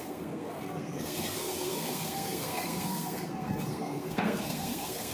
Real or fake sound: fake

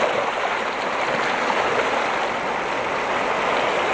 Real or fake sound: real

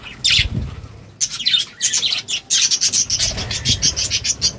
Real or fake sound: real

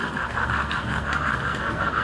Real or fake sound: fake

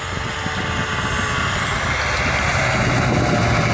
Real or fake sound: real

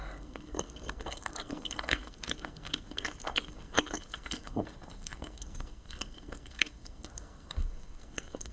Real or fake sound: fake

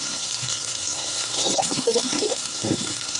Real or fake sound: fake